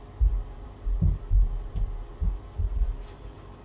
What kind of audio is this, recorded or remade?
recorded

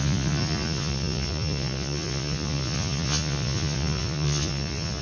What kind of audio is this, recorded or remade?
remade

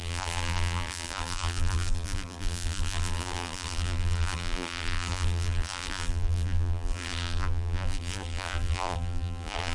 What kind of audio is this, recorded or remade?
remade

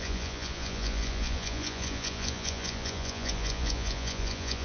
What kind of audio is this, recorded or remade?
remade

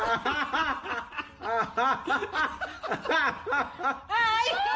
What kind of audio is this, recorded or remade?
recorded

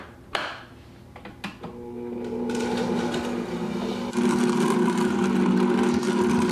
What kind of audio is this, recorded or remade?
recorded